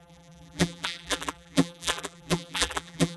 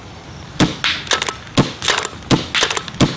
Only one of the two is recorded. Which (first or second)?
second